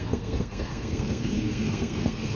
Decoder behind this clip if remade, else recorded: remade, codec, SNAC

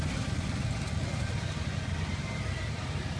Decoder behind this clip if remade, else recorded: recorded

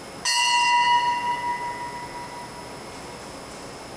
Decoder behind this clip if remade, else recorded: recorded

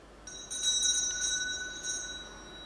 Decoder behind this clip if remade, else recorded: recorded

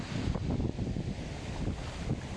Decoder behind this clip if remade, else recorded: recorded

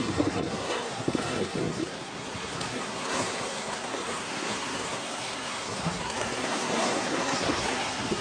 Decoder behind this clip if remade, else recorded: remade, codec, SNAC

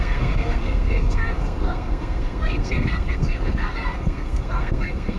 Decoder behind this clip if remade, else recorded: remade, codec, SNAC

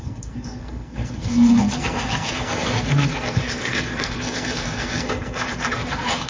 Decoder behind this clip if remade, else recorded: remade, codec, SNAC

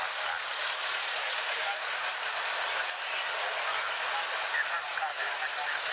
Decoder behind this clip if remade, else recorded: recorded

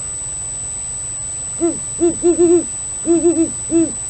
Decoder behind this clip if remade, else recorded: recorded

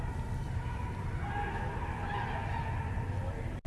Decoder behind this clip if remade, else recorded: recorded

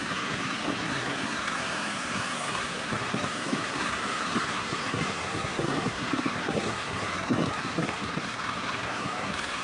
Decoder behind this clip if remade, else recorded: remade, codec, SNAC